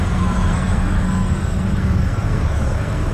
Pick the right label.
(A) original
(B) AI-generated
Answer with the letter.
B